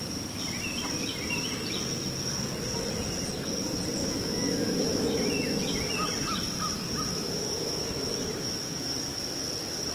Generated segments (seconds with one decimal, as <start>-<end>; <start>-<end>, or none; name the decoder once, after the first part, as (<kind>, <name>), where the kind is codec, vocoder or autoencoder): 4.0-5.3 (autoencoder, DAC-VAE); 7.1-9.2